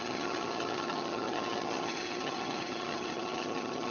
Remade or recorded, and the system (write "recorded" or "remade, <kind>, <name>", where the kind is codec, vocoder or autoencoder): remade, vocoder, HiFi-GAN